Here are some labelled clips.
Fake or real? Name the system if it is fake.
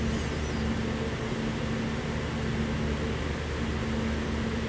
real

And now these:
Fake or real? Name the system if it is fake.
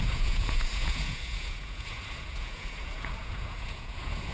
fake, vocoder, Vocos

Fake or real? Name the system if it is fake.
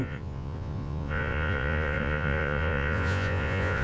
fake, vocoder, Vocos